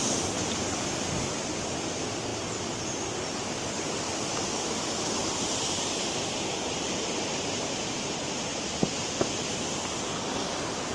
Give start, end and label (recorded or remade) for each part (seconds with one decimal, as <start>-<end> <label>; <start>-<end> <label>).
0.0-5.2 recorded; 5.2-6.3 remade; 6.3-10.9 recorded